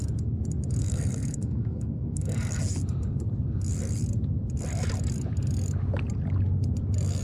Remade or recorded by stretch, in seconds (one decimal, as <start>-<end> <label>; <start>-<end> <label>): 0.0-0.8 recorded; 0.8-2.6 remade; 2.6-7.2 recorded